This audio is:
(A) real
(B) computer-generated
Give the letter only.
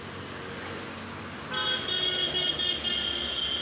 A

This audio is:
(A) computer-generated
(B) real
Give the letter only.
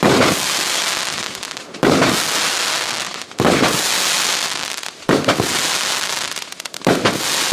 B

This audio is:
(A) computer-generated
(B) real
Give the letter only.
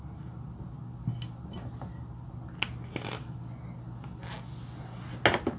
B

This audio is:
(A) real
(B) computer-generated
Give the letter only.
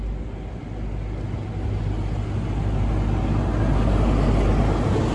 A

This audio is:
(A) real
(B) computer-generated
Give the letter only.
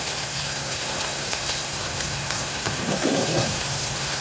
B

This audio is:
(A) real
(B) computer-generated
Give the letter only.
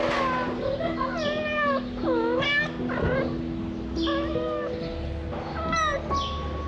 A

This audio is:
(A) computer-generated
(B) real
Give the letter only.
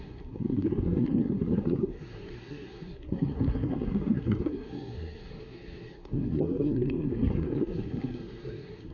A